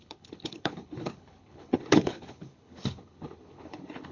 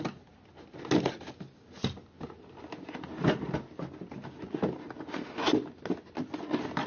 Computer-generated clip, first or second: first